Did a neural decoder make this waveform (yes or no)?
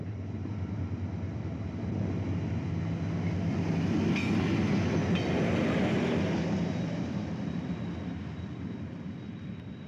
no